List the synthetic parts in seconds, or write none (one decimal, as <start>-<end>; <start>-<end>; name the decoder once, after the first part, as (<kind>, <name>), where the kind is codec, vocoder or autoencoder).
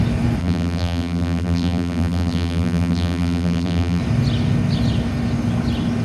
0.4-4.0 (vocoder, BigVGAN v2)